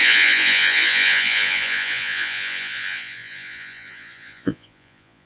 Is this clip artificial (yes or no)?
yes